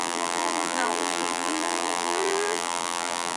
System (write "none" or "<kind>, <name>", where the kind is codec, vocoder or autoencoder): vocoder, BigVGAN v2